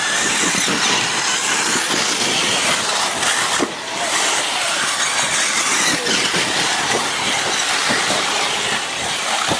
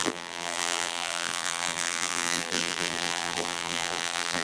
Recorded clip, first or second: first